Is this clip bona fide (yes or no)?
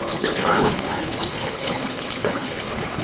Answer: no